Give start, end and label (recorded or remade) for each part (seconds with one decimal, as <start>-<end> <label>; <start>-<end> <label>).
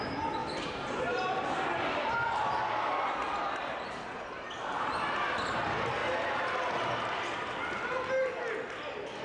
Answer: 0.0-0.4 recorded; 0.4-4.0 remade; 4.0-9.2 recorded